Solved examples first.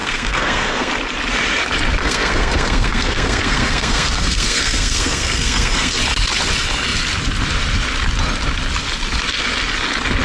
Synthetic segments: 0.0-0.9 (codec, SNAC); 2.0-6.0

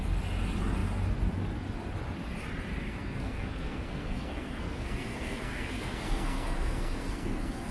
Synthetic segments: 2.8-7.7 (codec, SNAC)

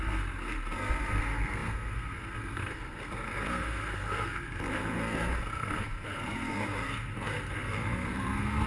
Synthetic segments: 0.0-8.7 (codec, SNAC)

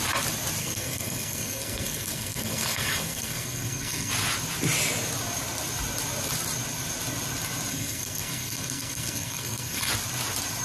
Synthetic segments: 0.6-4.1 (codec, SNAC); 7.7-9.9

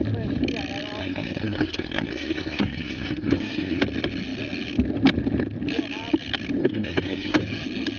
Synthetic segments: 1.0-3.8 (codec, SNAC); 6.6-7.4

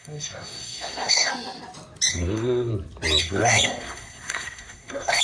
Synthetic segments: 0.0-1.3 (codec, SNAC); 2.1-2.7; 3.2-5.2

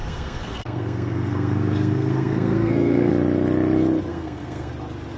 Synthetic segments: 0.0-3.1 (codec, SNAC); 4.1-4.7

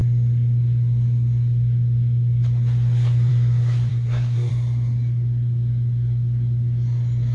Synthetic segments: 3.9-4.5 (codec, SNAC)